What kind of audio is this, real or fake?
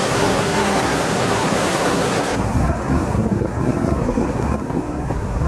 fake